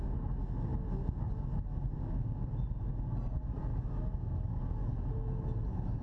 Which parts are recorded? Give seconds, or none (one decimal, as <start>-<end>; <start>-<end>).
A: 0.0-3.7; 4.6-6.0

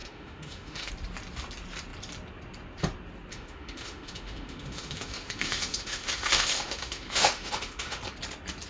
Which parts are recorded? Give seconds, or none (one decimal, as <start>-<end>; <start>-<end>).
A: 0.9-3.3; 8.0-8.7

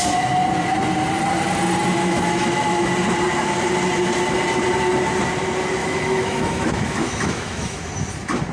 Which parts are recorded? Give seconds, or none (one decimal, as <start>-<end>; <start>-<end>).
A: 0.0-2.0; 2.9-5.8; 7.9-8.5

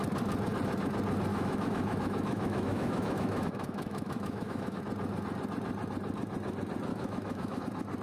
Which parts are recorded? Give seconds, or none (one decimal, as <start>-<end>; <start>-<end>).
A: 0.0-1.3; 4.8-6.9; 7.6-8.0

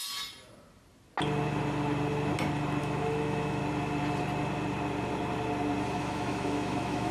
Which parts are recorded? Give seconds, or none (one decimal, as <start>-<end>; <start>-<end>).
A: 0.0-2.8; 3.6-6.0